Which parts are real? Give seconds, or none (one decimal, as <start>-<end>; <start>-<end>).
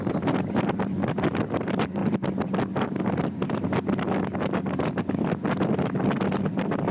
2.0-4.7